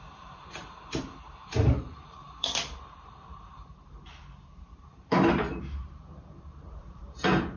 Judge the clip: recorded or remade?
remade